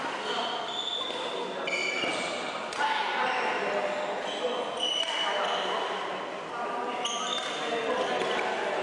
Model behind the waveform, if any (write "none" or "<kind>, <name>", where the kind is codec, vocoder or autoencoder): none